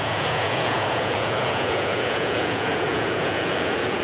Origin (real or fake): fake